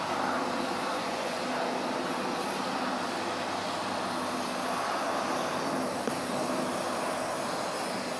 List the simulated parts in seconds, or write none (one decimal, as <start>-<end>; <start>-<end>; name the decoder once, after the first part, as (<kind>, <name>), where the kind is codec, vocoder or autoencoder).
0.9-1.4 (vocoder, Vocos)